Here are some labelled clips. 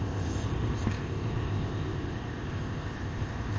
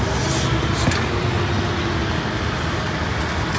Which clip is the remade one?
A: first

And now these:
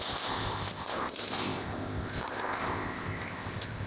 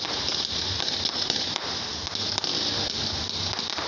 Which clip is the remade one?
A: first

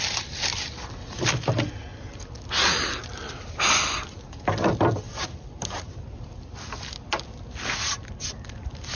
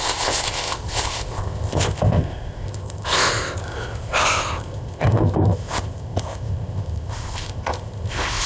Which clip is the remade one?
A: second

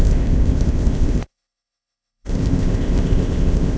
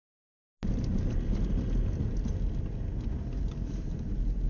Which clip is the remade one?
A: first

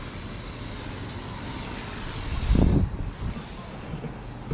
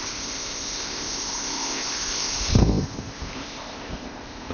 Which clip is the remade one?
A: second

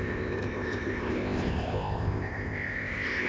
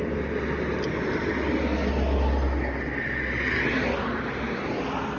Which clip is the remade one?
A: first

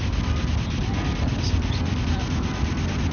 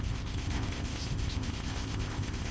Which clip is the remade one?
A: second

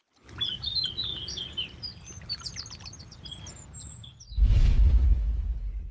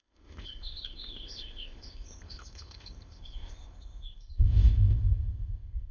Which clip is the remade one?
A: second